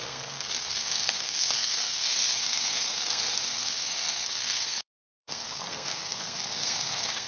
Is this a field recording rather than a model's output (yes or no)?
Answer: no